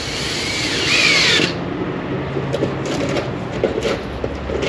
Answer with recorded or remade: recorded